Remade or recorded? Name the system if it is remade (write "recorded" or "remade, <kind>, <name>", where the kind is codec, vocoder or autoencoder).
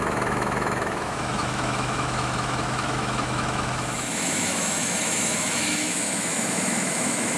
remade, autoencoder, DAC-VAE